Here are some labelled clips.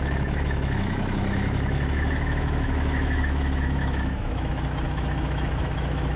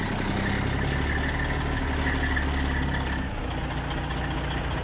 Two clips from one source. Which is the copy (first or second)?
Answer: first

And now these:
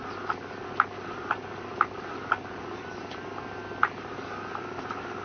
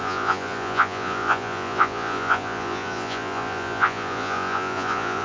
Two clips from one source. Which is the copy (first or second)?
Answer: second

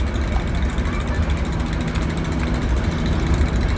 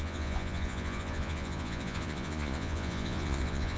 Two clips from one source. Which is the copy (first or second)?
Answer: second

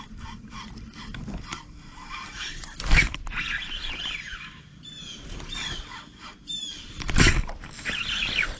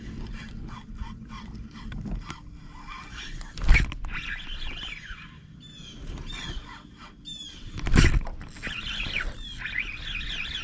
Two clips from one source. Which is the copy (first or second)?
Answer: first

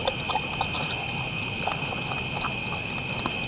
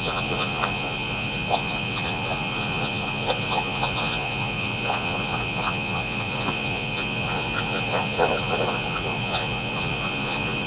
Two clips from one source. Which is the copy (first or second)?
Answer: second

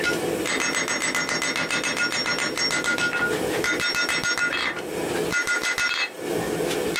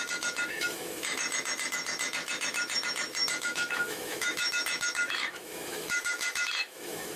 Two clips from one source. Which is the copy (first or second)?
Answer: second